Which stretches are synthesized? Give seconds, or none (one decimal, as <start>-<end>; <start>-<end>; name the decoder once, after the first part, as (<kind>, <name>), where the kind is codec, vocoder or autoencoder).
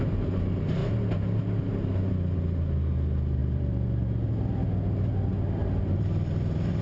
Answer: 3.4-4.3 (vocoder, BigVGAN v2); 5.6-6.8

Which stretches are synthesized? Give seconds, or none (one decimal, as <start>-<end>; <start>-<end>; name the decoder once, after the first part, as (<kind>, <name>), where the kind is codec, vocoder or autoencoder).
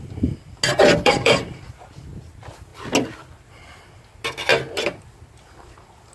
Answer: 0.7-1.6 (vocoder, BigVGAN v2)